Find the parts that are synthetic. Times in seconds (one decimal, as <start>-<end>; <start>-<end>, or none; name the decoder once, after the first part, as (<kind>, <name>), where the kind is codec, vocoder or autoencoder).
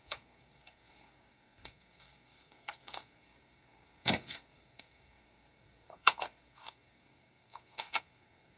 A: 0.0-8.6 (codec, SNAC)